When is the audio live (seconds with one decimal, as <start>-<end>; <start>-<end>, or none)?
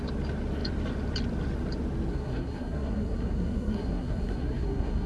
0.0-2.1